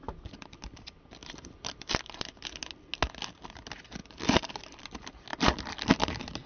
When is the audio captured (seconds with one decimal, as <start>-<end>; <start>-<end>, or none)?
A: 0.0-1.2; 1.9-4.0; 4.6-5.3; 5.8-6.5

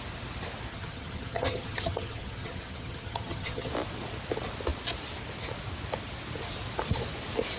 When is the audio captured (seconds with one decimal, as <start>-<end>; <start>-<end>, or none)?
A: 0.0-0.7; 3.7-7.6